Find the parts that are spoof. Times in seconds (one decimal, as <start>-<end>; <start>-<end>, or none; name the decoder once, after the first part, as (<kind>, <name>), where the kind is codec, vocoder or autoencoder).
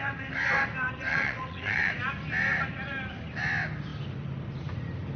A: 1.1-1.9 (vocoder, WaveNeXt)